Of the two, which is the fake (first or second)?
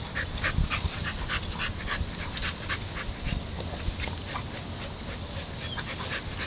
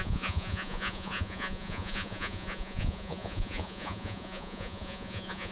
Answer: second